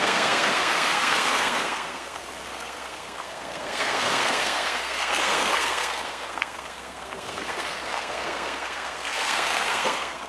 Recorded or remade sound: remade